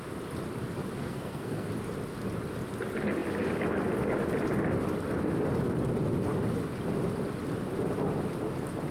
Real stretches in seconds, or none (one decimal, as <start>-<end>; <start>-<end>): 0.0-1.0; 1.7-8.9